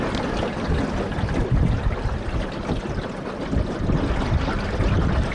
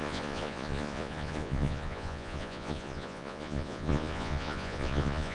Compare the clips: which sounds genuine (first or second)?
first